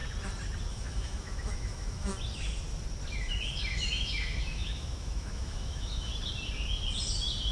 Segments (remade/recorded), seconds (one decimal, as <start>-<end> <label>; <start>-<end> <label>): 0.0-0.7 recorded; 0.7-2.1 remade; 2.1-3.2 recorded; 3.2-6.1 remade; 6.1-7.5 recorded